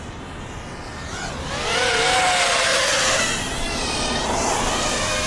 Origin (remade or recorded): recorded